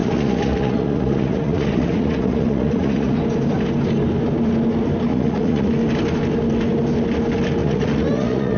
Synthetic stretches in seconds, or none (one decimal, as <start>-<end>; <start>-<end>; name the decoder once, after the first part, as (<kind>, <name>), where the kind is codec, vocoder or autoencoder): 0.0-3.2 (vocoder, Vocos); 5.1-5.7; 7.6-8.6